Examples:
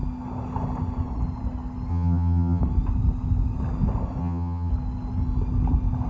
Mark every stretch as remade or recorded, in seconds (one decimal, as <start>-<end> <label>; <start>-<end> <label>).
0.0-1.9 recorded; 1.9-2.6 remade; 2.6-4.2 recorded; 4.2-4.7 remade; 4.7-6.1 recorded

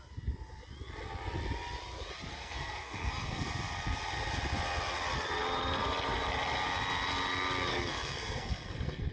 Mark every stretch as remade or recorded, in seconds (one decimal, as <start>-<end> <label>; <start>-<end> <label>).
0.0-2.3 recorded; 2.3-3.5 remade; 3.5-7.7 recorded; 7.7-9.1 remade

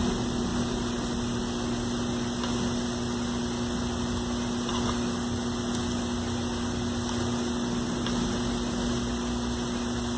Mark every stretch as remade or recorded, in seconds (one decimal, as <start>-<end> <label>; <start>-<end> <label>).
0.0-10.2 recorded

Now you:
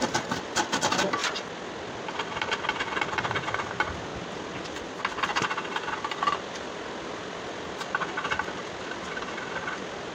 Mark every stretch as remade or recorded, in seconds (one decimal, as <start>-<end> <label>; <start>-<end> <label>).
0.0-10.1 recorded

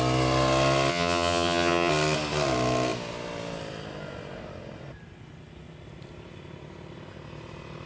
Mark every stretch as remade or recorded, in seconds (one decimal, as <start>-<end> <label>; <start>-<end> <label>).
0.0-0.9 recorded; 0.9-1.9 remade; 1.9-7.9 recorded